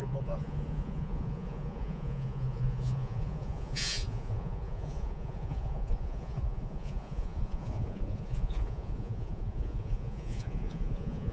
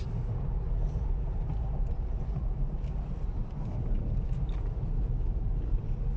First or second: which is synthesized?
first